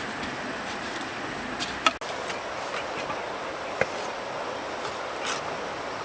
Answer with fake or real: real